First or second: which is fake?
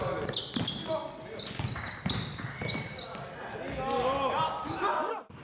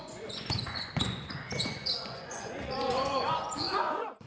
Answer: second